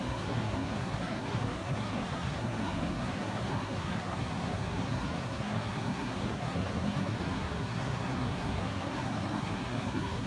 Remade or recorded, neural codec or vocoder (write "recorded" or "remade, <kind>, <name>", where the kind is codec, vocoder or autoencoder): remade, codec, SNAC